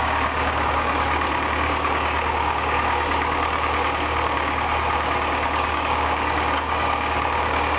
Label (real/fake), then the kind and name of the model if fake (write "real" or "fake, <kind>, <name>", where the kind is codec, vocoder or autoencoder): fake, codec, DAC